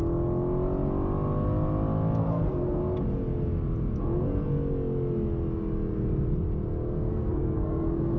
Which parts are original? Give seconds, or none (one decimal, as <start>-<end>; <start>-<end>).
0.0-2.2; 2.8-7.1